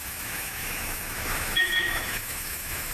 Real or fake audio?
fake